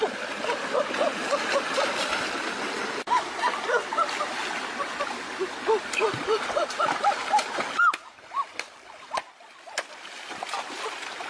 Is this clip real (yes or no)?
yes